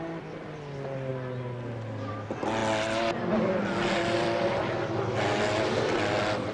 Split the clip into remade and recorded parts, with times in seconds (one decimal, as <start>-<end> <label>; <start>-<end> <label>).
0.0-6.5 recorded